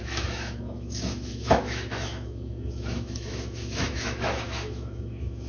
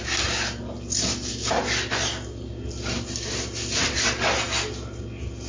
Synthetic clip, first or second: first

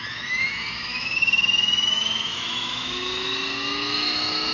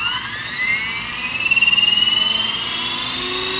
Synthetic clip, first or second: first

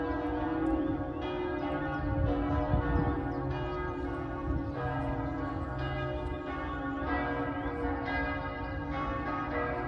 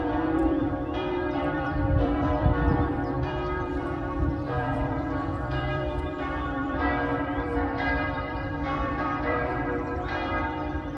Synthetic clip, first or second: second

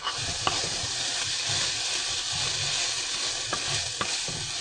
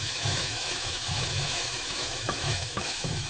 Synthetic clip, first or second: second